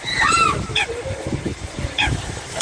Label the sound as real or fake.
fake